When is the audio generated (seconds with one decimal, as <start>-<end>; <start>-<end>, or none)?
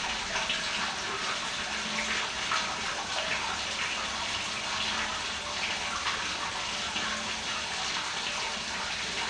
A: none